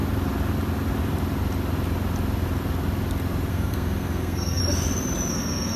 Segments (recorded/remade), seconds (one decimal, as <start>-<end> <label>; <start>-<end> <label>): 0.0-3.5 recorded; 3.5-4.6 remade; 4.6-5.3 recorded; 5.3-5.8 remade